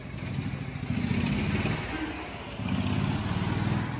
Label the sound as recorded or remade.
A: recorded